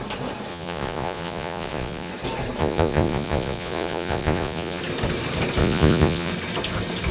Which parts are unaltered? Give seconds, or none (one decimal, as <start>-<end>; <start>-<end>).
0.0-0.5; 2.1-2.6; 4.8-5.6; 6.3-7.1